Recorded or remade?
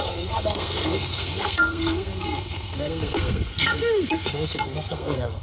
remade